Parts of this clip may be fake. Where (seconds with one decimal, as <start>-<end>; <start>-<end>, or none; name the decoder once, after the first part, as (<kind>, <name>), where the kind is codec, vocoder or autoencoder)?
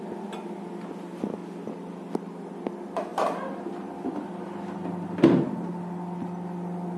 none